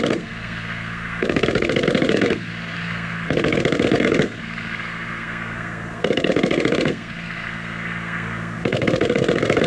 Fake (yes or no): yes